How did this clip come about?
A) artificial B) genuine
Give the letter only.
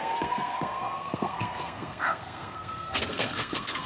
A